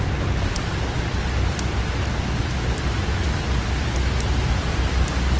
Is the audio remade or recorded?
recorded